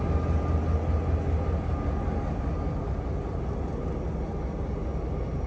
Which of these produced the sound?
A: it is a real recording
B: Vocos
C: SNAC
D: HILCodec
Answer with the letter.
A